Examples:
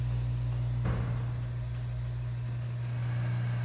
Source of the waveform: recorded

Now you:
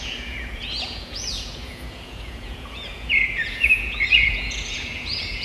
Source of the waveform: remade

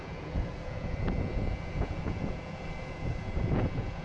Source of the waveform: remade